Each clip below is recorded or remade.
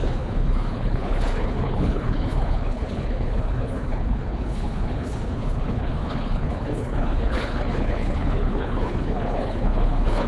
remade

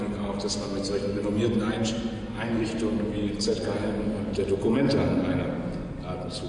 recorded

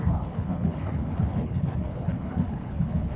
remade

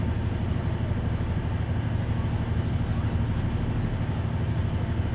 recorded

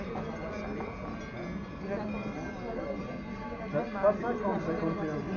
recorded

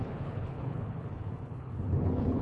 remade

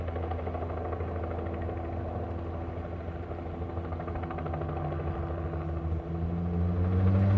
recorded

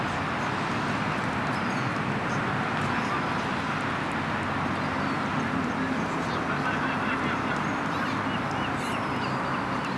recorded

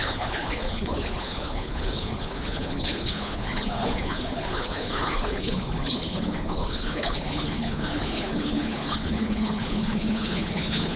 remade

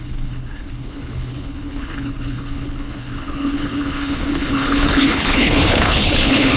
remade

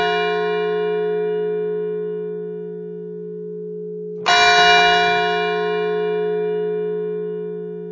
recorded